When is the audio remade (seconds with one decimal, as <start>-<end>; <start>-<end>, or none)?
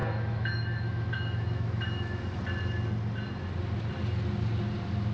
0.0-2.4